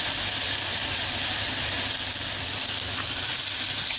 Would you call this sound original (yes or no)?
yes